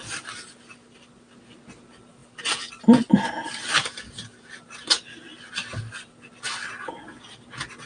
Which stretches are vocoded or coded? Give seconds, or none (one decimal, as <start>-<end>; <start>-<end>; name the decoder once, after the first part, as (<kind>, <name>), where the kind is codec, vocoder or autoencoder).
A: none